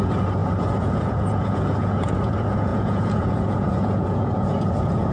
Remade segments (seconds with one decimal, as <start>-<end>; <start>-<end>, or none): 0.0-5.1